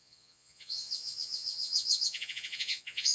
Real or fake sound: fake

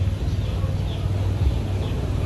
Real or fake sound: real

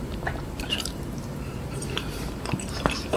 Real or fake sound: fake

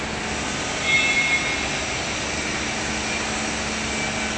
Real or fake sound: real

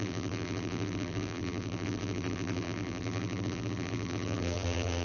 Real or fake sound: fake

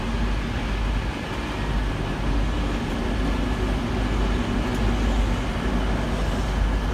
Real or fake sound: real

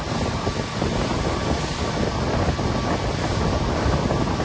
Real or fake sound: real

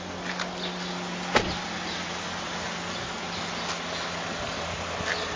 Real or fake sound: real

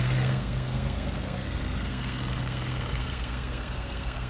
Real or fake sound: fake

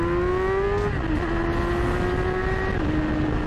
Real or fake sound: real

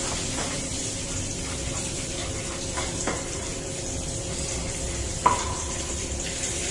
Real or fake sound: fake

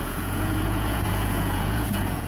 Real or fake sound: fake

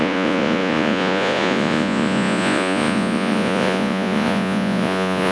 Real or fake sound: fake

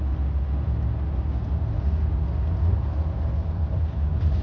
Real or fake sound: real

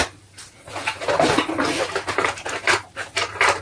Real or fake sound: real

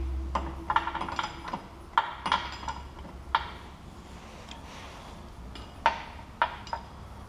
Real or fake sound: real